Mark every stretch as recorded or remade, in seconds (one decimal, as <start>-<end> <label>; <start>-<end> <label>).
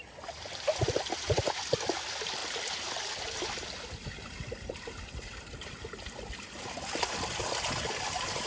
0.0-8.5 recorded